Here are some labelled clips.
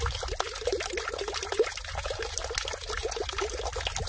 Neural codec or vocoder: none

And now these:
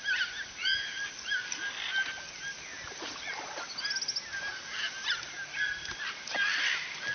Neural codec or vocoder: none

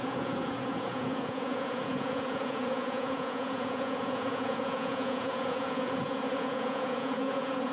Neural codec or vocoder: vocoder, Vocos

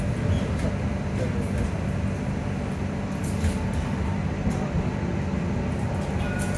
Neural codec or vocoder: none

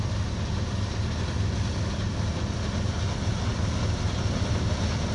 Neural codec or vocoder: none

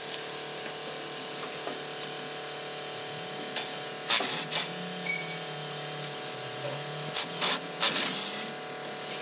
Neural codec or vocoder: none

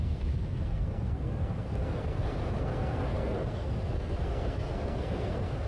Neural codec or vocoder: codec, SNAC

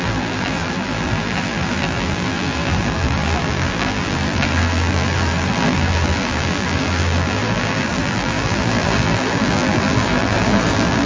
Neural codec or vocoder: vocoder, BigVGAN v2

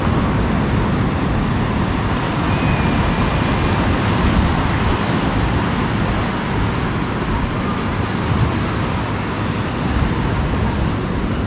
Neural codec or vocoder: none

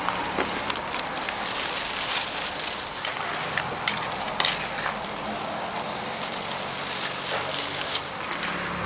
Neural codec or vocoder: none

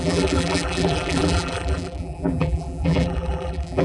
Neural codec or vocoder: vocoder, BigVGAN v2